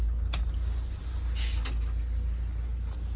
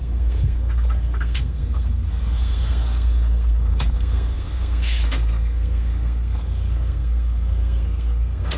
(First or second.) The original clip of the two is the first